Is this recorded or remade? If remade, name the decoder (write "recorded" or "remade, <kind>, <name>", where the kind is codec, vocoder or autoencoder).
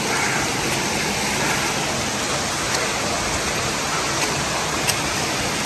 recorded